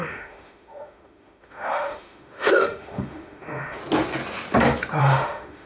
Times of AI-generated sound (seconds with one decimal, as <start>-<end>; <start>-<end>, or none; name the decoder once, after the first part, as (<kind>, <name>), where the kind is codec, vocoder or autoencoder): 0.0-3.8 (autoencoder, DAC-VAE); 5.0-5.7